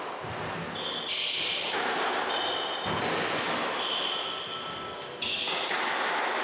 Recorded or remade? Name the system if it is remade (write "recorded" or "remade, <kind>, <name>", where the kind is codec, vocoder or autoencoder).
recorded